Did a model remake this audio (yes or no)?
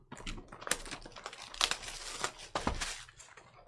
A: no